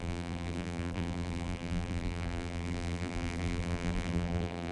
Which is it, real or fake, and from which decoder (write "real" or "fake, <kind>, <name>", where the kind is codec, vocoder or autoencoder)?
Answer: fake, vocoder, BigVGAN v2